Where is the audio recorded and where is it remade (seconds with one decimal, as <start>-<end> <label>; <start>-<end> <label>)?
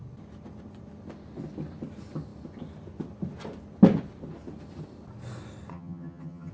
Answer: 0.0-5.7 recorded; 5.7-6.5 remade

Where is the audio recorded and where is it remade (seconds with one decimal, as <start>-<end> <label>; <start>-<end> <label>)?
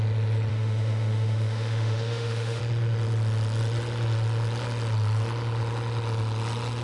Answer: 0.0-0.5 recorded; 0.5-2.6 remade; 2.6-6.8 recorded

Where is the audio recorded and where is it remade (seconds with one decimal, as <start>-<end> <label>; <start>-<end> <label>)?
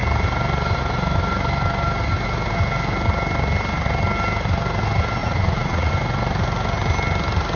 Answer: 0.0-5.2 recorded; 5.2-5.9 remade; 5.9-7.6 recorded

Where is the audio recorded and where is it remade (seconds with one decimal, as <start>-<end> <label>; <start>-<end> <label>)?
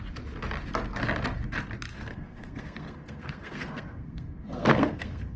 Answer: 0.0-1.9 recorded; 1.9-5.4 remade